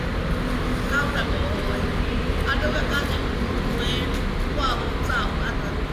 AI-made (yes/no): no